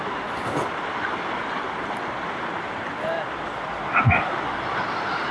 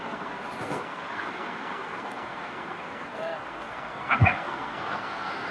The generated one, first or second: second